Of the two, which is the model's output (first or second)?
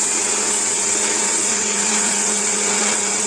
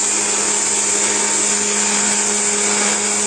first